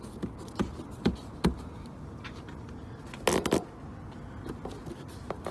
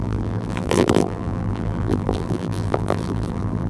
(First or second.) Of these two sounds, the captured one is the first